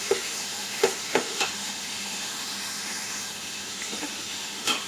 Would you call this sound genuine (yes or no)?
no